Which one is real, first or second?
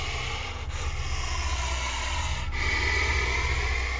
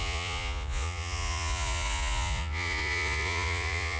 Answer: first